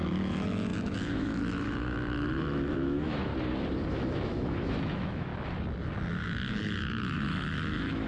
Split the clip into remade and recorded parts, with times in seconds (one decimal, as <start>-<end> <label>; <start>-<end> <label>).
0.0-3.3 remade; 3.3-3.9 recorded; 3.9-5.3 remade; 5.3-6.6 recorded; 6.6-8.1 remade